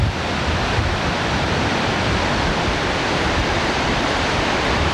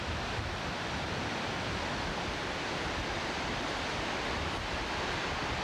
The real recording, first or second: second